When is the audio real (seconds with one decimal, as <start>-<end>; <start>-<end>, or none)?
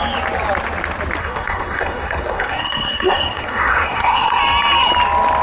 0.0-1.2; 4.4-5.4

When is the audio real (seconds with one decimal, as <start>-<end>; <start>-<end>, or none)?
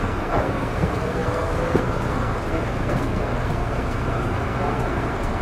none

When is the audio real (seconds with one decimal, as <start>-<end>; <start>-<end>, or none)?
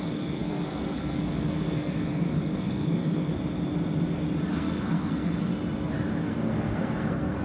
3.3-4.5; 5.5-6.2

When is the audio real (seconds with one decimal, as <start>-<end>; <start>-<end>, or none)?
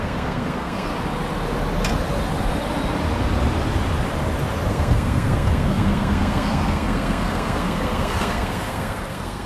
0.9-4.7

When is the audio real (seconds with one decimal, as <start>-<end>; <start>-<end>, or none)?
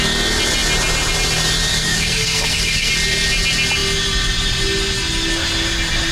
0.0-1.7; 2.9-6.1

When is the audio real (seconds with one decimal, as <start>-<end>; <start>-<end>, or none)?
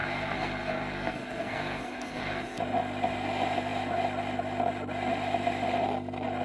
2.6-6.4